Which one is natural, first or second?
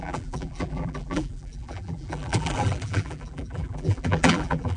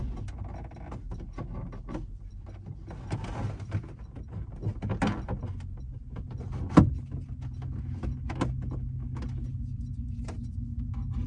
second